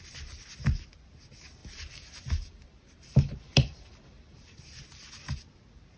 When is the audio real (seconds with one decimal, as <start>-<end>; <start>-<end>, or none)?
0.0-1.6; 4.6-6.0